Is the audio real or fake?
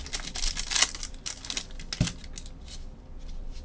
real